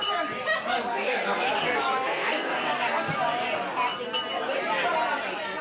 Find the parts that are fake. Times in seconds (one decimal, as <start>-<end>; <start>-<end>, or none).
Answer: 0.9-3.1